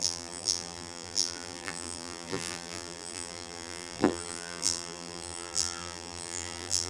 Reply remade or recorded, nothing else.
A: remade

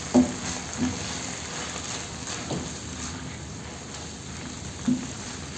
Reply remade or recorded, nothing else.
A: recorded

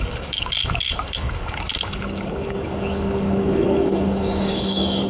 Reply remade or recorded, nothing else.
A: remade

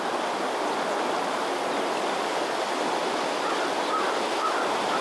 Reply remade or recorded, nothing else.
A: recorded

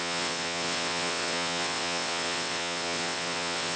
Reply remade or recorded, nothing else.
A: remade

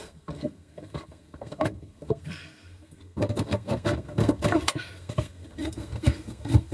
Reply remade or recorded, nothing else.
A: remade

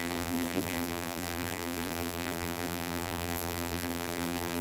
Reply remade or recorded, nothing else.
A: remade